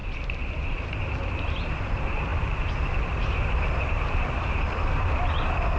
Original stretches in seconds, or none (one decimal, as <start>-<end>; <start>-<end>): none